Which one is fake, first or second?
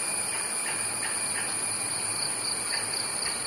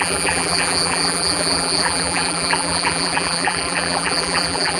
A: second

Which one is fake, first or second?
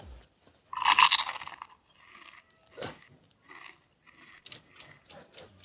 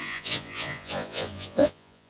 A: second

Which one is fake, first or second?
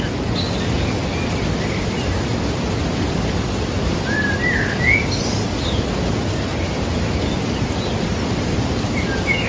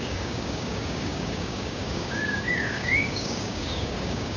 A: second